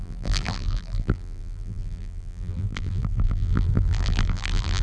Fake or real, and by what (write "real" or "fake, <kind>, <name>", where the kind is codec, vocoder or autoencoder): fake, vocoder, BigVGAN v2